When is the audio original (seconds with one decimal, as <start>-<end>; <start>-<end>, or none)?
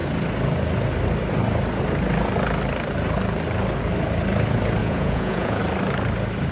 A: 0.0-4.8; 5.6-6.5